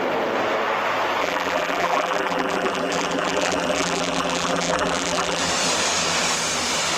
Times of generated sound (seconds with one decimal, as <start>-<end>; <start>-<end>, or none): 1.2-5.4